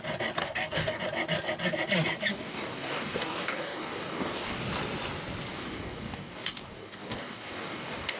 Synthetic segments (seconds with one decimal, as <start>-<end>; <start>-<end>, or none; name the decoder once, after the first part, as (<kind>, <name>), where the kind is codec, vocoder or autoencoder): 0.4-1.0 (codec, DAC); 2.3-4.6; 5.5-8.2